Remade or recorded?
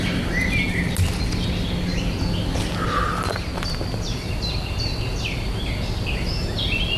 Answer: recorded